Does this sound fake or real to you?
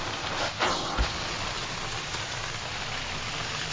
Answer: real